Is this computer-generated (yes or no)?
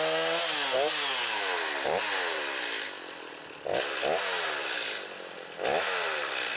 no